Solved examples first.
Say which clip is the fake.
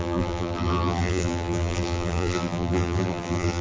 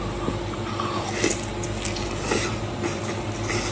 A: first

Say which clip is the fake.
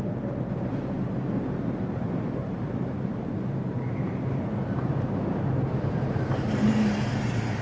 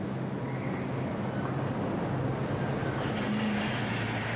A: first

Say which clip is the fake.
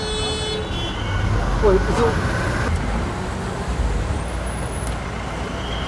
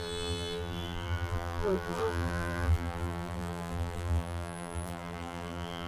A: second